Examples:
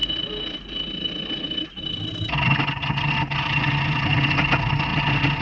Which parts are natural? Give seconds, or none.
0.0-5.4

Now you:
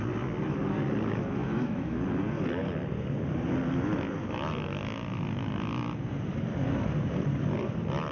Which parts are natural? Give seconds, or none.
0.0-1.4; 2.0-8.1